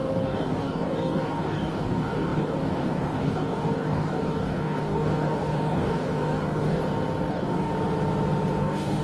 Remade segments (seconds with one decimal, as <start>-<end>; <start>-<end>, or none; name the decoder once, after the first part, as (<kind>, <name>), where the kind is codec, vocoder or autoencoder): 0.0-6.8 (codec, DAC); 7.3-7.7; 8.6-9.0